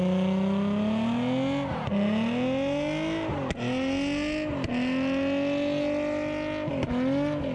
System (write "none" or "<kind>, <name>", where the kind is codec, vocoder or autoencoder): none